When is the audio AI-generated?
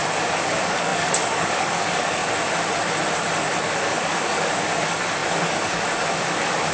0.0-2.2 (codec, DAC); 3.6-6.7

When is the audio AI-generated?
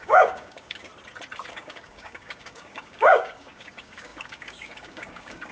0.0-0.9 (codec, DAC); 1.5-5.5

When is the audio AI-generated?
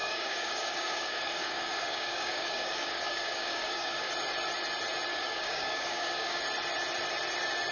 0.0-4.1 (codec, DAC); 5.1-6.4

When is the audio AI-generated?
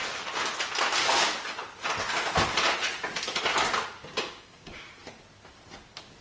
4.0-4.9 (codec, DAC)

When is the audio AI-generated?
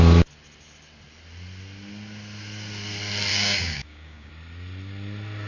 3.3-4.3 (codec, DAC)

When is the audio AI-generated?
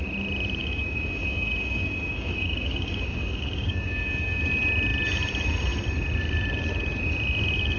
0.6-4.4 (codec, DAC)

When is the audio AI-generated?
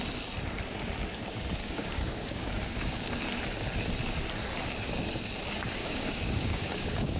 1.6-3.1 (codec, DAC); 5.8-7.2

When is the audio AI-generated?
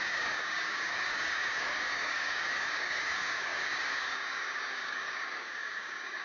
0.0-6.2 (codec, DAC)